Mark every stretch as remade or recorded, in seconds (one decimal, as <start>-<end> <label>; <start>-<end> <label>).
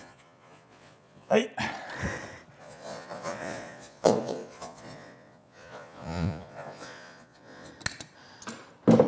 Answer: 0.0-1.4 remade; 1.4-2.6 recorded; 2.6-7.7 remade; 7.7-9.1 recorded